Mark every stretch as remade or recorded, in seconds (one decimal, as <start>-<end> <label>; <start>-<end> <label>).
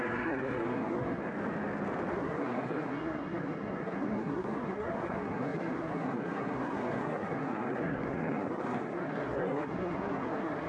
0.0-1.2 remade; 1.2-2.1 recorded; 2.1-10.7 remade